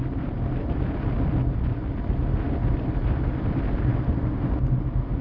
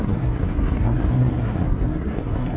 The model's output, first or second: second